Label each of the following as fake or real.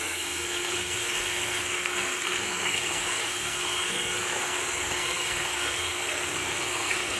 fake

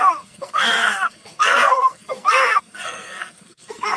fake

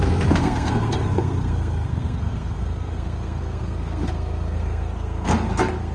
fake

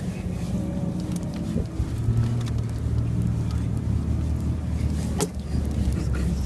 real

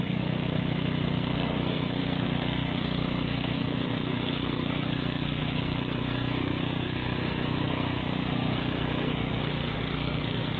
fake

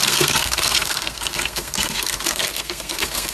fake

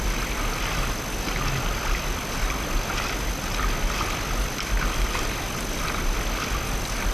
real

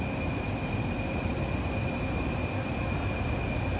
real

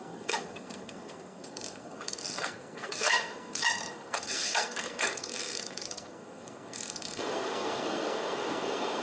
fake